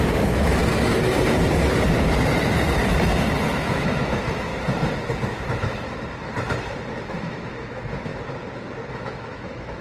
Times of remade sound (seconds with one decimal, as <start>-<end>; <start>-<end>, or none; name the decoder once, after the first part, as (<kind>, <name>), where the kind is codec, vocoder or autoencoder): 0.0-0.6 (autoencoder, DAC-VAE); 3.5-4.5; 7.2-8.1; 8.9-9.8